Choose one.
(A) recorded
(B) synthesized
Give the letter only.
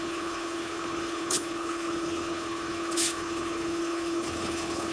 B